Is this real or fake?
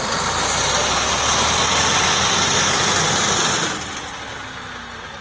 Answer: real